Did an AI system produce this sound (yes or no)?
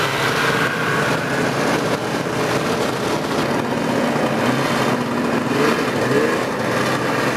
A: no